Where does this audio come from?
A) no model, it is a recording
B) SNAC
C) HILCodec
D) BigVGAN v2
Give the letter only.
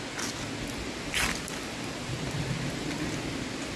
A